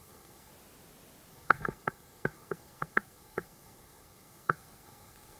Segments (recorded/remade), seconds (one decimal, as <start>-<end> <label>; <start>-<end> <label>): 0.0-0.5 remade; 0.5-1.3 recorded; 1.3-5.4 remade